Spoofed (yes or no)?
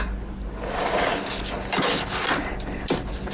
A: no